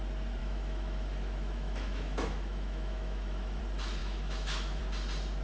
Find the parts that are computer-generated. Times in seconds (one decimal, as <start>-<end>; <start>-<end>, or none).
0.4-3.6; 4.0-4.8